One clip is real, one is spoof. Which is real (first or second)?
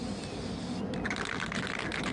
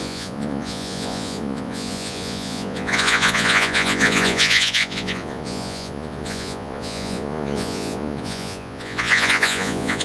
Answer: first